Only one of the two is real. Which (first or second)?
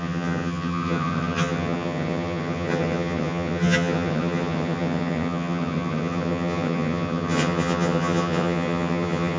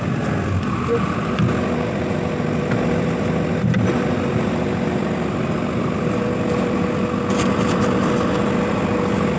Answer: second